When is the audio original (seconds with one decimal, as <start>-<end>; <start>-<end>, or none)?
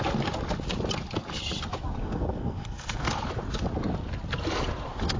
0.0-2.0; 3.1-5.2